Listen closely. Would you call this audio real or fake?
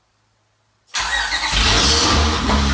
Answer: real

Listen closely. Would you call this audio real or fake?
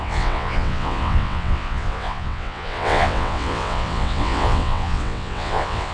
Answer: fake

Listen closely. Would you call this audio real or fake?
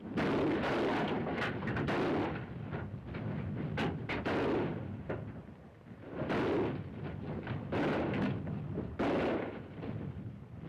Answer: real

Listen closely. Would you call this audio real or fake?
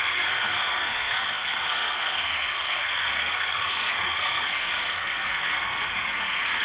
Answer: fake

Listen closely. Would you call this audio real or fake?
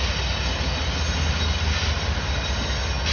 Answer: real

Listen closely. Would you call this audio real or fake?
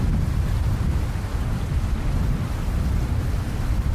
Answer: real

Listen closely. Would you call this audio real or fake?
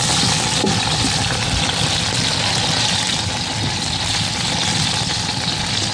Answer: real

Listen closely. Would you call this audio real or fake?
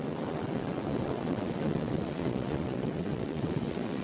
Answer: fake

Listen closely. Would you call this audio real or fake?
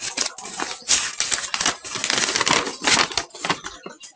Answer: real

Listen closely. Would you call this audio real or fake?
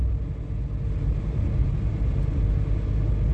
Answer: real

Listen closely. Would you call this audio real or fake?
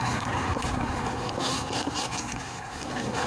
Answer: fake